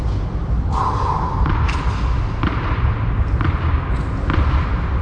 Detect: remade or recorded recorded